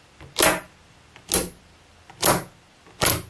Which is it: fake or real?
real